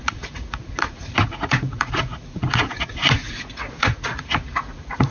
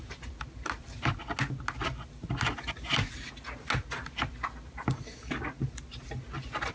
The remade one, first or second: first